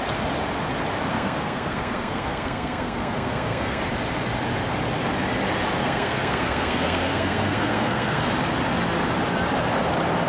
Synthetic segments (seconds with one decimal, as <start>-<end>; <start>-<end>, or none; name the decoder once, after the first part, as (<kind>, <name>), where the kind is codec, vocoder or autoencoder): 1.1-3.8 (codec, SNAC); 5.8-8.2